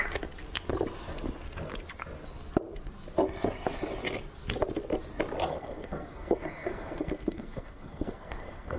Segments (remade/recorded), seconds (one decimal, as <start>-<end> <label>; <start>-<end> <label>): 0.0-5.5 recorded; 5.5-8.8 remade